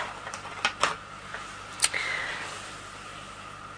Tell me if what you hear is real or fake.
real